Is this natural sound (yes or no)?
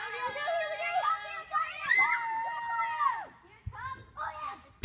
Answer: yes